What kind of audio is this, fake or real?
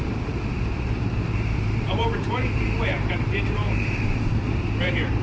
fake